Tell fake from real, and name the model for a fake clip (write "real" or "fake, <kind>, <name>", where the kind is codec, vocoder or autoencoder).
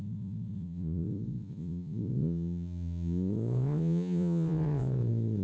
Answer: fake, vocoder, Vocos